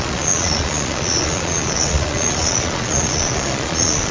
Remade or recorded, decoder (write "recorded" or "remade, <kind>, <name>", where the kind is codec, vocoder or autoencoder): remade, vocoder, Vocos